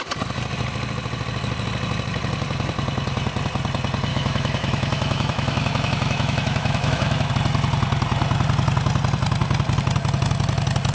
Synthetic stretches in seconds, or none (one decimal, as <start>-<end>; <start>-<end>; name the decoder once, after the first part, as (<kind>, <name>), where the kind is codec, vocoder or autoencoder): 4.1-7.3 (autoencoder, DAC-VAE)